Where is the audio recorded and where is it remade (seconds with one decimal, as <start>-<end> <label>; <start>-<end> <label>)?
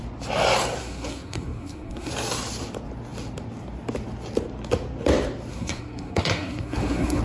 0.0-0.8 recorded; 0.8-2.1 remade; 2.1-5.5 recorded; 5.5-7.2 remade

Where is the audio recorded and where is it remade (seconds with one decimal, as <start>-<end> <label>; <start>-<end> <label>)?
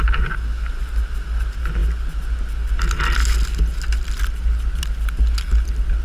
0.0-6.0 recorded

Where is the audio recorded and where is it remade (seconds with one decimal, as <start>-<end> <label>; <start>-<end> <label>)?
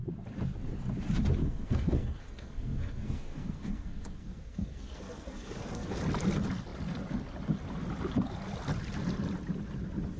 0.0-1.4 recorded; 1.4-6.0 remade; 6.0-10.2 recorded